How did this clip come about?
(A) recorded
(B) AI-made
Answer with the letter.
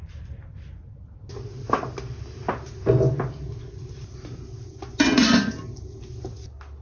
A